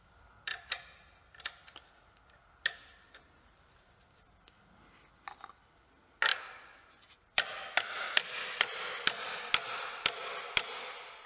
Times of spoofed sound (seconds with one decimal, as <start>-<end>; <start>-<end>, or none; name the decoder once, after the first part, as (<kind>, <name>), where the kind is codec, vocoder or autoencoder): 6.3-9.4 (vocoder, BigVGAN v2)